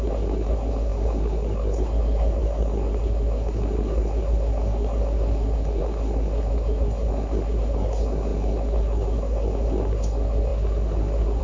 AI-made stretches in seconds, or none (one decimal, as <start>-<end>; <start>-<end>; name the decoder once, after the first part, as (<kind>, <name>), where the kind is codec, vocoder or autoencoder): 0.0-11.4 (codec, SNAC)